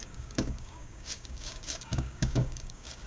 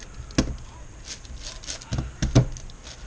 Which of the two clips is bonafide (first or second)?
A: second